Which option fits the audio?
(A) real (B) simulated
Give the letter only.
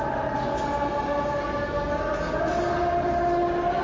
A